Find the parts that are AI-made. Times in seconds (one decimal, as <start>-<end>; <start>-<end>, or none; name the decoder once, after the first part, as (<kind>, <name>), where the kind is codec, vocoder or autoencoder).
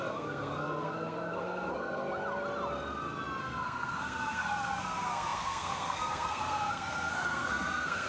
0.0-2.1 (codec, SNAC); 3.4-8.1